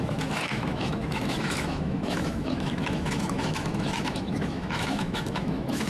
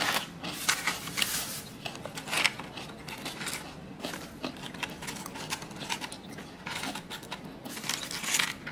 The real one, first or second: second